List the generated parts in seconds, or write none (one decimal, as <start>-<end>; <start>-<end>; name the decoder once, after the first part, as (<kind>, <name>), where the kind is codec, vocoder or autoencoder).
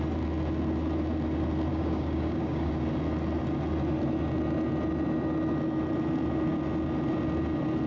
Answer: 1.7-2.7 (codec, DAC)